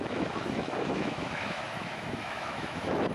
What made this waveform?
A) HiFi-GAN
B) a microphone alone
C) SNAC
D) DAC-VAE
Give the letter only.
D